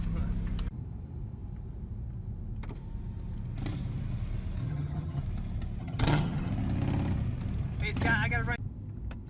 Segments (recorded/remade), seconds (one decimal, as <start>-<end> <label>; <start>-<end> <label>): 0.0-4.6 recorded; 4.6-5.2 remade; 5.2-5.8 recorded; 5.8-6.5 remade; 6.5-9.3 recorded